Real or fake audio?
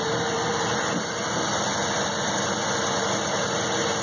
real